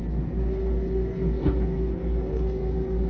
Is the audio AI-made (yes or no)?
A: yes